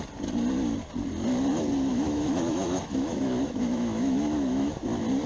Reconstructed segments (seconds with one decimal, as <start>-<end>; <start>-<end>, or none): 1.9-4.8